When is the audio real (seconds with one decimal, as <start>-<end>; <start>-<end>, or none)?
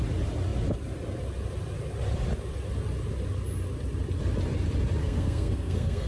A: 0.0-5.0